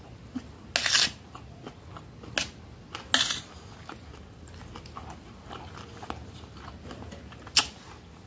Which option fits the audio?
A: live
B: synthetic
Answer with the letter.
A